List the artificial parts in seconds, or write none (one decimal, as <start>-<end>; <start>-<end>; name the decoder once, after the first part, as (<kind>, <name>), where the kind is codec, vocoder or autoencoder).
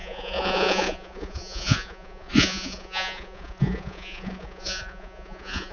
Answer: 0.0-5.7 (vocoder, Vocos)